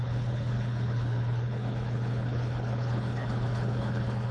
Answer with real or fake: fake